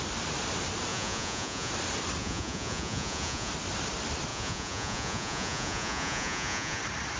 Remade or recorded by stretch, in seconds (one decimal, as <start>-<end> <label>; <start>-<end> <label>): 0.0-0.9 recorded; 0.9-1.7 remade; 1.7-2.2 recorded; 2.2-3.5 remade; 3.5-4.3 recorded; 4.3-6.8 remade; 6.8-7.2 recorded